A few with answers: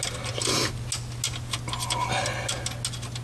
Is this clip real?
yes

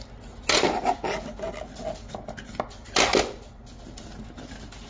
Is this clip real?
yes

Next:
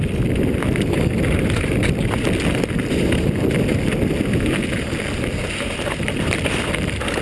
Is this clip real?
yes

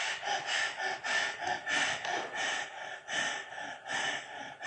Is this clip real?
yes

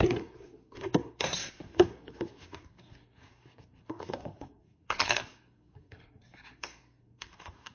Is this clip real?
no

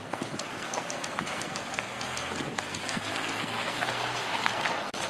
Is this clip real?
no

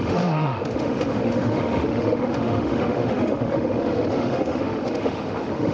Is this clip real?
no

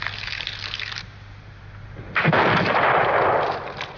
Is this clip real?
yes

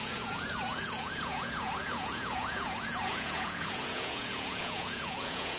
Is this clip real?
no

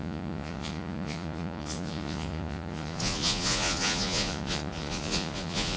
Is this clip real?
no